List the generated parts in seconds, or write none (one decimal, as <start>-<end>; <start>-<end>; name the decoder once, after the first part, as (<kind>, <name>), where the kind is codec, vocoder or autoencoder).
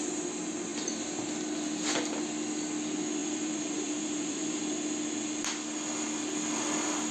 3.2-4.6 (vocoder, BigVGAN v2)